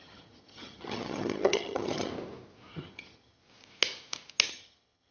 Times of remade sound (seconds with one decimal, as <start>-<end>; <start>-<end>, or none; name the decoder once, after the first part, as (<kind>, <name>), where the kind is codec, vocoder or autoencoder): 0.0-2.1 (vocoder, HiFi-GAN); 2.7-3.4; 4.5-5.1